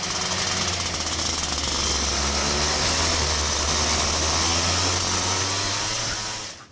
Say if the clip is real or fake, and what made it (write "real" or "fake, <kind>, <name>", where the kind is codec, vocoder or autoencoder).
real